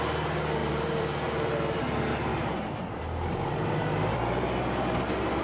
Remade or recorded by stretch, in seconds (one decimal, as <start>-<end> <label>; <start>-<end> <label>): 0.0-0.6 recorded; 0.6-1.8 remade; 1.8-2.3 recorded; 2.3-4.2 remade; 4.2-5.4 recorded